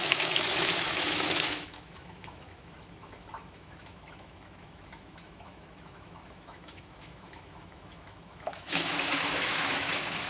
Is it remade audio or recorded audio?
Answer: remade